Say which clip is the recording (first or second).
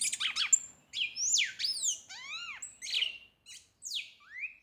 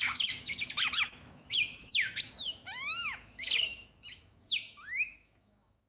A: first